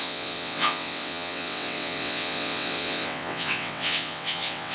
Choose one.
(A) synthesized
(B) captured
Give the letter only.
A